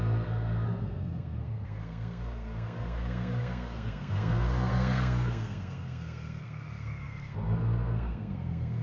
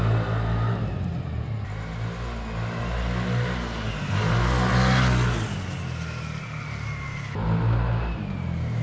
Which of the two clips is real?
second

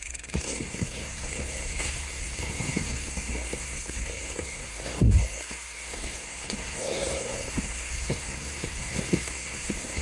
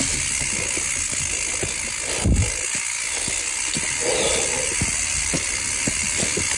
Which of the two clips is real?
second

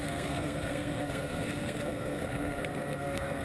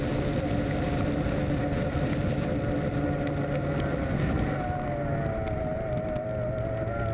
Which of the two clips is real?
second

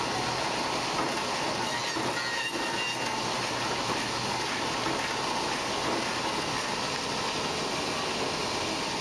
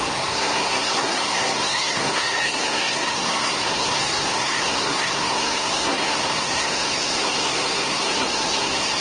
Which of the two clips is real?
first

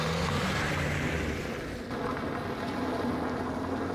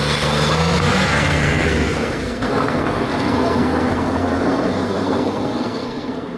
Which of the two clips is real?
first